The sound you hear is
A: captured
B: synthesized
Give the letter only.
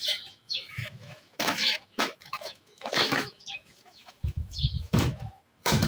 B